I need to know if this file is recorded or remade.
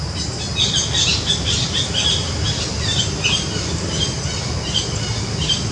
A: recorded